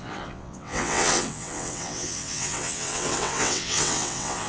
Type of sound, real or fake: fake